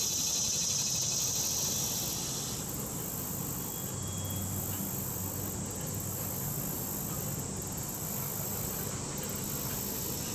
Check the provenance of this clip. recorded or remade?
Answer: recorded